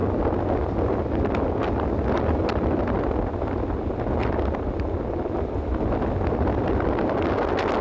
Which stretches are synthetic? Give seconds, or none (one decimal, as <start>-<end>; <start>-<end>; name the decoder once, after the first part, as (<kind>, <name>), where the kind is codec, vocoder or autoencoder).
4.2-7.2 (vocoder, BigVGAN v2)